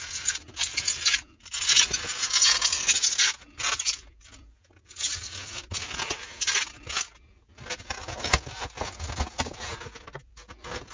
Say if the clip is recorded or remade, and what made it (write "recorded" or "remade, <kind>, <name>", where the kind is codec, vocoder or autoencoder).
recorded